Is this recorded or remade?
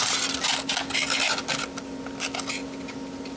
recorded